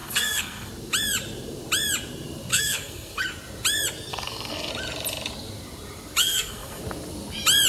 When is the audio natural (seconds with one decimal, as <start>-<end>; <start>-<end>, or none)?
0.7-2.5; 3.2-4.1; 4.7-6.2; 6.8-7.7

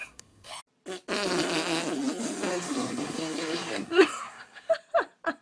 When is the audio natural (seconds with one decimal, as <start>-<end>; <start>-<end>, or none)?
0.6-2.5; 4.7-5.4

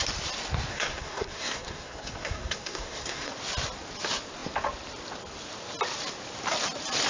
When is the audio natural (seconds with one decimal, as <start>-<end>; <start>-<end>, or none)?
0.0-0.7; 3.3-7.1

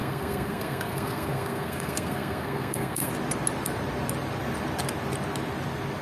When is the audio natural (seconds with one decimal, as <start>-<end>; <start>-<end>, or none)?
3.1-6.0

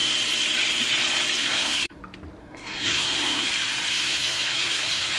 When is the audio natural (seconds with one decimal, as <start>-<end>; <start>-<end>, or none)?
0.0-1.4; 2.0-2.4; 3.5-3.9

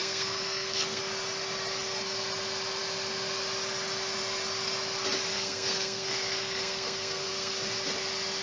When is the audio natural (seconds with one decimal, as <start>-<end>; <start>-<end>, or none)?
1.0-5.3; 7.5-8.4

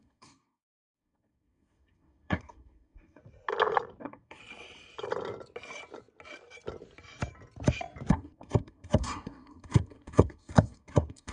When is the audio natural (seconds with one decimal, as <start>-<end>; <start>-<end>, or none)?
3.2-4.0; 4.4-8.1

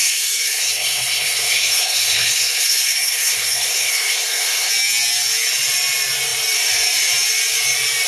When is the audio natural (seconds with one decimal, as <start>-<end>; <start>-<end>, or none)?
4.7-8.1